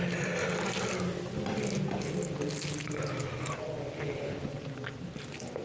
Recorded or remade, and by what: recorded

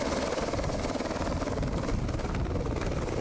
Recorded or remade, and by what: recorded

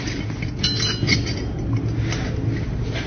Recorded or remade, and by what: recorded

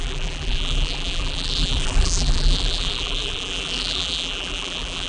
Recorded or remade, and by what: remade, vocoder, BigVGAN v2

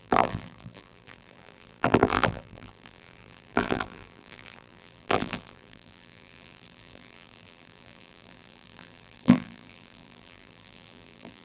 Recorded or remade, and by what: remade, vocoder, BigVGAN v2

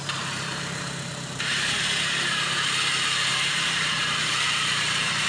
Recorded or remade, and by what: remade, vocoder, BigVGAN v2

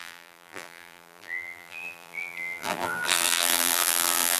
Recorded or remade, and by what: remade, vocoder, BigVGAN v2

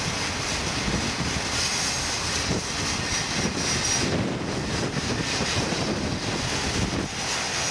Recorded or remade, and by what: recorded